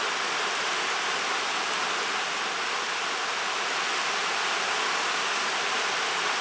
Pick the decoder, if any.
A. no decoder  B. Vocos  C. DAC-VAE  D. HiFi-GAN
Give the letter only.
A